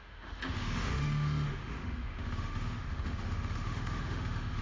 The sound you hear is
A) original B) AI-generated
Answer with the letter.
B